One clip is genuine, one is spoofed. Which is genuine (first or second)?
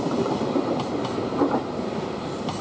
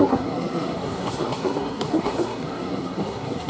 first